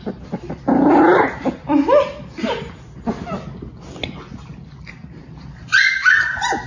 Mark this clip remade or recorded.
recorded